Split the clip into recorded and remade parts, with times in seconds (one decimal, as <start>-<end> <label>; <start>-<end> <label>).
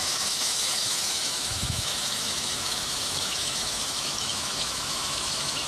0.0-5.7 remade